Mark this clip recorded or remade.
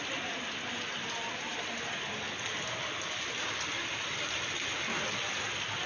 recorded